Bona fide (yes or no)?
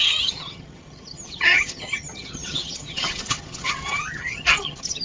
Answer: no